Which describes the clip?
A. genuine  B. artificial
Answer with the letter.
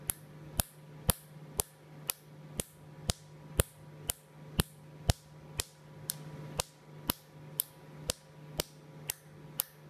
A